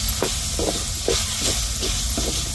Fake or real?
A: real